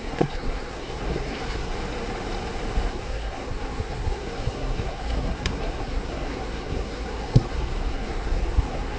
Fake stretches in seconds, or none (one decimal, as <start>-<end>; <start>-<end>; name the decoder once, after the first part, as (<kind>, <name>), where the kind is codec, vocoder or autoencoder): 0.0-1.7 (codec, SNAC); 2.9-9.0